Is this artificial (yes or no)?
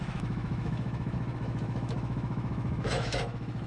yes